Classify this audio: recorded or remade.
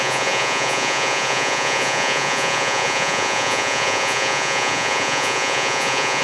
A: remade